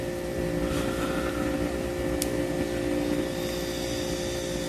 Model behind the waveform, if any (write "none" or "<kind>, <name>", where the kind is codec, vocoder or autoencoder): none